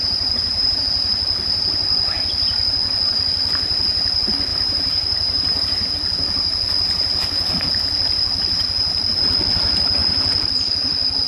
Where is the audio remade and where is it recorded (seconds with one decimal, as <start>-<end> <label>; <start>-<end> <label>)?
0.0-0.8 remade; 0.8-4.5 recorded; 4.5-5.9 remade; 5.9-11.3 recorded